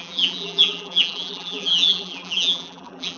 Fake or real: fake